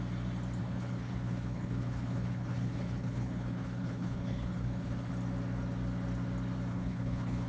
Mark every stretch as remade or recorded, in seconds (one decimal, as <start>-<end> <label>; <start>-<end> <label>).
0.0-0.6 recorded; 0.6-5.1 remade; 5.1-6.7 recorded; 6.7-7.5 remade